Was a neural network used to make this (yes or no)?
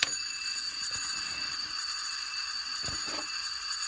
yes